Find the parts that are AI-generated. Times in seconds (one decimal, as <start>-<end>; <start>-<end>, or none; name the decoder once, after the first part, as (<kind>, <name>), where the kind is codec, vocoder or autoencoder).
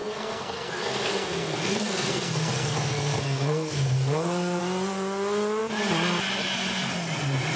0.0-4.6 (codec, SNAC)